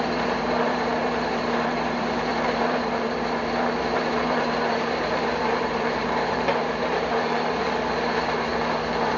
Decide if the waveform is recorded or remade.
remade